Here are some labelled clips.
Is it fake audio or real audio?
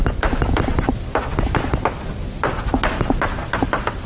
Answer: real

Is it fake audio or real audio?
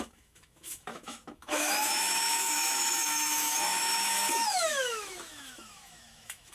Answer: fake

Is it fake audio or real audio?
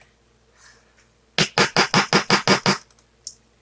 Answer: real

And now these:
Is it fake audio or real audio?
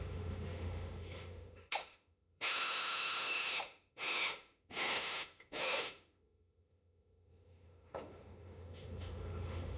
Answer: fake